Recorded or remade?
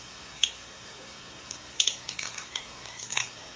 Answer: remade